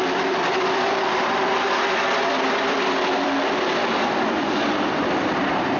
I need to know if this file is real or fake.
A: fake